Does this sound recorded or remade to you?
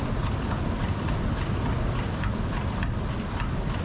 recorded